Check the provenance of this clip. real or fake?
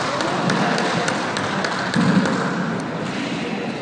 real